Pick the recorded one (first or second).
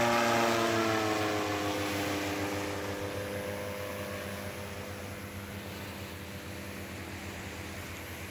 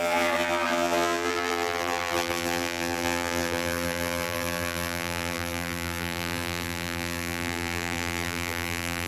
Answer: first